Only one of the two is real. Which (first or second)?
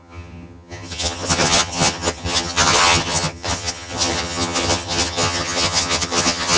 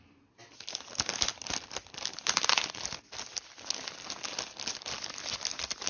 second